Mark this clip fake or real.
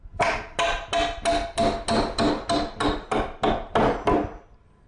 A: real